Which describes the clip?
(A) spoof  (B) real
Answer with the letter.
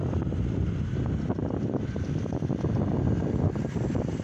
B